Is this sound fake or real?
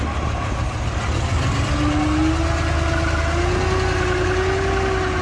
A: real